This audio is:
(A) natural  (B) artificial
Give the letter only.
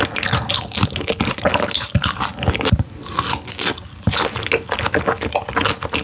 A